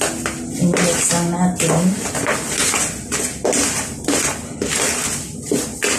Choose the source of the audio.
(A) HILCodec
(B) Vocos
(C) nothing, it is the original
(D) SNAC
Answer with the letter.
C